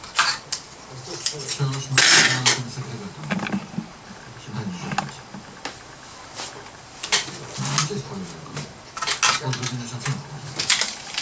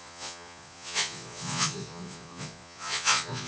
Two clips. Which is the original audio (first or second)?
first